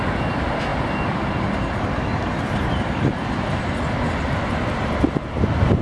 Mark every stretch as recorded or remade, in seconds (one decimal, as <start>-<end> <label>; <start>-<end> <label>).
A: 0.0-5.8 recorded